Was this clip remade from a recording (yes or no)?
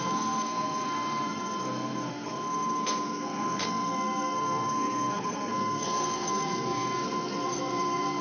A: yes